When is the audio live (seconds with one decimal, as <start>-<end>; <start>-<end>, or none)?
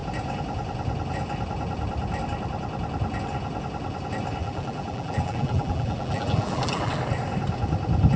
0.0-4.4; 6.9-8.2